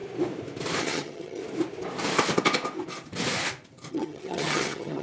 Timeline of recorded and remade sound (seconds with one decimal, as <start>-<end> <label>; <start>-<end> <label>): 0.0-0.8 recorded; 0.8-1.4 remade; 1.4-3.9 recorded; 3.9-5.0 remade